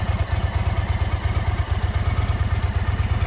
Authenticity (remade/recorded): recorded